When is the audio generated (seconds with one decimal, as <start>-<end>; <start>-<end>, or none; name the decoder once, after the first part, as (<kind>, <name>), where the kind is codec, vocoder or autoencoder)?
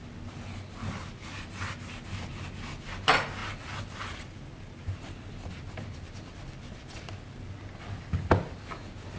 none